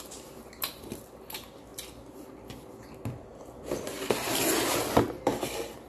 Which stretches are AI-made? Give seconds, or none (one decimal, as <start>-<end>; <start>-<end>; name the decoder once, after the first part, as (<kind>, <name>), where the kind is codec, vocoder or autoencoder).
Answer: none